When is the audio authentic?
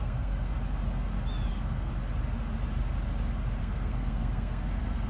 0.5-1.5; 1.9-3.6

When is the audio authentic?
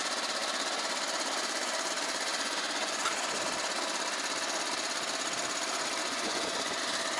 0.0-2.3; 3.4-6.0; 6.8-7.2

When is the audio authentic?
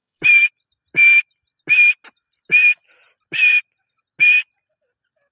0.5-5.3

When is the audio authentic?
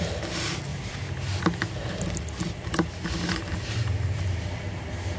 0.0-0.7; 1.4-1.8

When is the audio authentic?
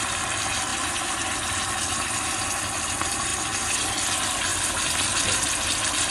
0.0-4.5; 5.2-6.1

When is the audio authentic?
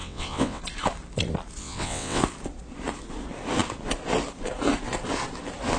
0.6-1.6; 2.2-5.8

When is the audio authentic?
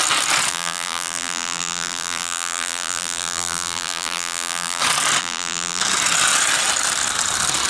0.0-0.5; 4.8-5.2; 5.8-7.7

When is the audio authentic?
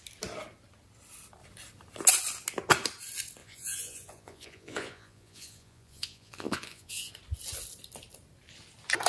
0.0-3.4; 7.1-9.1